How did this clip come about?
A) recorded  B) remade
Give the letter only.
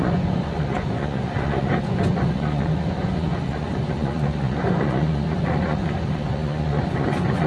B